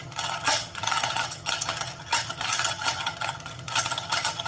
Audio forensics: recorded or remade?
remade